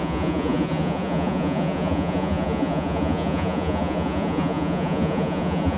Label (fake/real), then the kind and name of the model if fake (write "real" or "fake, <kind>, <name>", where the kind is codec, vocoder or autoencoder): fake, vocoder, Vocos